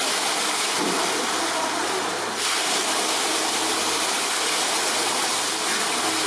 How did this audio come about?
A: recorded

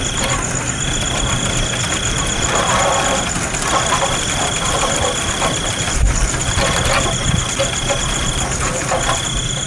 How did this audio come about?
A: recorded